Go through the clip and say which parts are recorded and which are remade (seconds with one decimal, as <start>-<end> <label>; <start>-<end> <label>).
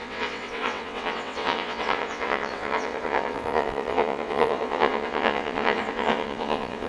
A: 0.0-6.9 remade